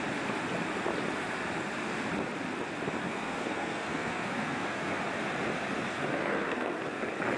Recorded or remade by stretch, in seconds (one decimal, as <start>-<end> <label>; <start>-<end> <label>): 0.0-3.0 recorded; 3.0-5.0 remade; 5.0-5.9 recorded; 5.9-6.8 remade; 6.8-7.4 recorded